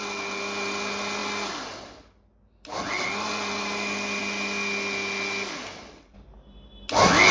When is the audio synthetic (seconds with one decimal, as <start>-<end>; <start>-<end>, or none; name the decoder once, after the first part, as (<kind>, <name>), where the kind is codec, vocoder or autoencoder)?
none